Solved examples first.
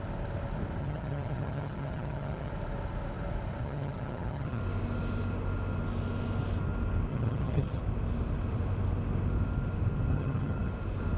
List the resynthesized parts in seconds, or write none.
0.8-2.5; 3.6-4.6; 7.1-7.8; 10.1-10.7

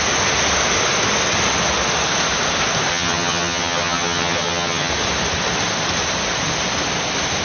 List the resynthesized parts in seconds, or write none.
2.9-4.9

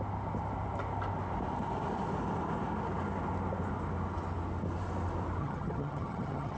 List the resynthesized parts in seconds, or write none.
5.4-6.6

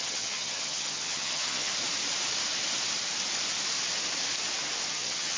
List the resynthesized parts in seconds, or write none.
0.0-1.7; 4.9-5.4

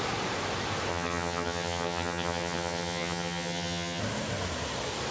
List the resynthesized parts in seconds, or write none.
0.9-4.0

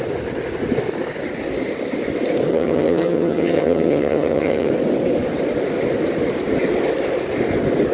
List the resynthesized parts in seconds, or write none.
2.5-4.7

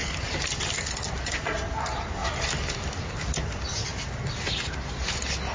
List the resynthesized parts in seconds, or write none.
none

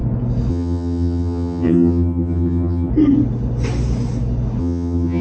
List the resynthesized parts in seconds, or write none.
0.5-2.9; 4.6-5.2